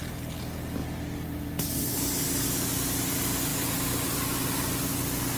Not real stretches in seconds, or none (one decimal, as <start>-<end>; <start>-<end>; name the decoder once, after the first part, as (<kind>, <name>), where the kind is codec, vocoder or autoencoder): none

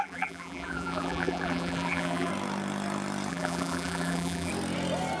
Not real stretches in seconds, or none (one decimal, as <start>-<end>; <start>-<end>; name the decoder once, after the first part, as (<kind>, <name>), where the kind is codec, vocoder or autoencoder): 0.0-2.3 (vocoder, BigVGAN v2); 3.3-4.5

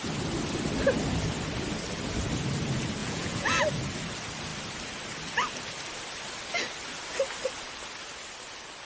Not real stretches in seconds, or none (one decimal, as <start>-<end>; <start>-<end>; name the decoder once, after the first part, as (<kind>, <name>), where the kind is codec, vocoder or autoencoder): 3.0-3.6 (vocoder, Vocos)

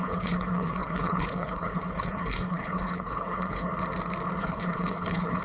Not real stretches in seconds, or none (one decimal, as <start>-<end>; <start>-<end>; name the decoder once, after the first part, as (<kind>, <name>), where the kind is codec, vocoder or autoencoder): 0.0-3.7 (codec, HILCodec); 4.4-5.4